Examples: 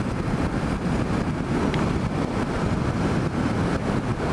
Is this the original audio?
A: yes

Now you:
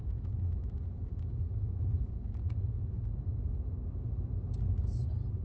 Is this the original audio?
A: yes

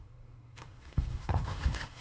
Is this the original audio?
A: no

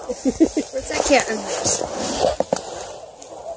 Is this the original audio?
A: yes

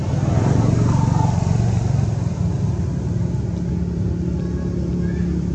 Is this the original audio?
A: yes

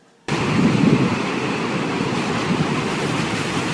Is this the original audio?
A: yes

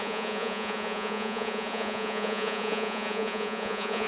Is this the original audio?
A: no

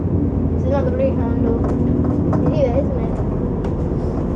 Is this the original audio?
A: yes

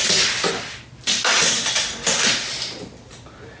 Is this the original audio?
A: yes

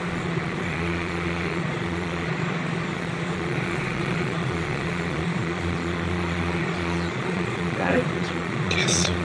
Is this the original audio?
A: no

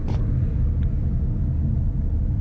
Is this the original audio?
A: yes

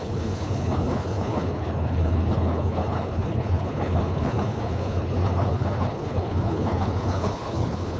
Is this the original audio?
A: no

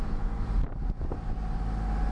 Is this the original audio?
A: yes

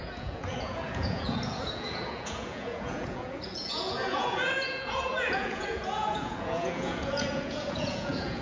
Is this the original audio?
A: no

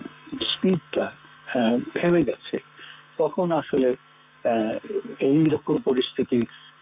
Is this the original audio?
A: no